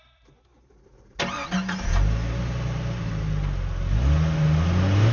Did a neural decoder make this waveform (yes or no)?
no